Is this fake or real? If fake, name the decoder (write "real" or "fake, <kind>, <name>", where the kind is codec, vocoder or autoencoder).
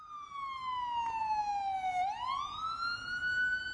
real